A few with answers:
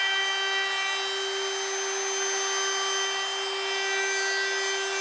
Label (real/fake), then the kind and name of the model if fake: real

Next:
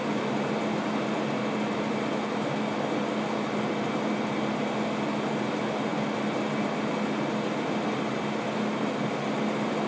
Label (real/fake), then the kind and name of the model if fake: real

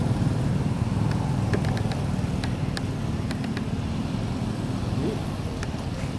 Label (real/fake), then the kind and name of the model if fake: real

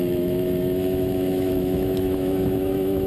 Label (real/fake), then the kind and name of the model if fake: fake, autoencoder, DAC-VAE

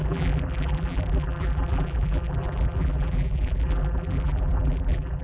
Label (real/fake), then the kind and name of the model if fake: fake, vocoder, BigVGAN v2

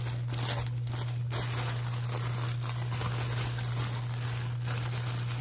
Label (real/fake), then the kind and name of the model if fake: real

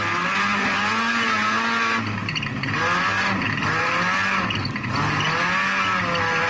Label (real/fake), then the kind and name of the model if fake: real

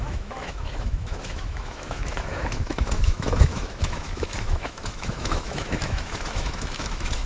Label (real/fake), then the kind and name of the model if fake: fake, autoencoder, DAC-VAE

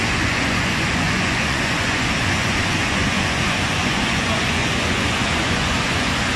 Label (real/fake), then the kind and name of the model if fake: fake, vocoder, Vocos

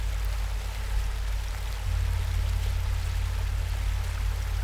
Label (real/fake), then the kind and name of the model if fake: real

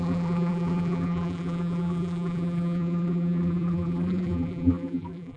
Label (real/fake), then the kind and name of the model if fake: fake, vocoder, BigVGAN v2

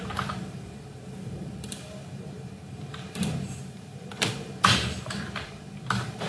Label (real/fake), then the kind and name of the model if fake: fake, vocoder, BigVGAN v2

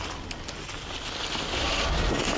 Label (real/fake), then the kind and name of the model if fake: real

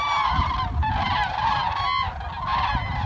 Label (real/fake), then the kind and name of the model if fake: real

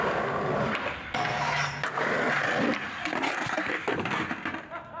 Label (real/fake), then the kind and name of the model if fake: real